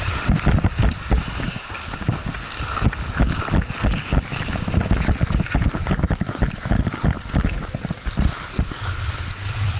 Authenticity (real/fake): real